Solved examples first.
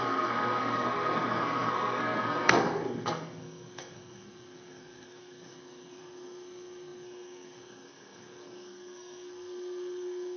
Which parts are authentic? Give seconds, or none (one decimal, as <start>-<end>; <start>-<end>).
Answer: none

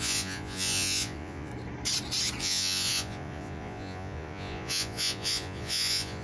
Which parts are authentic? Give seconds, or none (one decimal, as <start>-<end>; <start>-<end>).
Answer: 1.5-2.4

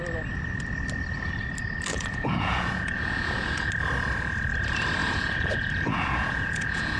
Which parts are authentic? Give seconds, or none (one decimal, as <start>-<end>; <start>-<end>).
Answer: 0.0-1.9; 3.7-5.0